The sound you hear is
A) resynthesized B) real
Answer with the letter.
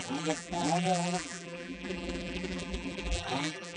A